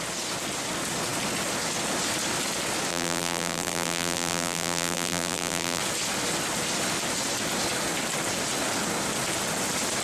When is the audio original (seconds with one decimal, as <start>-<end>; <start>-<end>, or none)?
0.0-2.9; 5.8-10.0